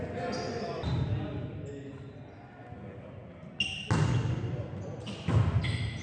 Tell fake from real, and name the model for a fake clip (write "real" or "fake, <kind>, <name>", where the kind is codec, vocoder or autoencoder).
real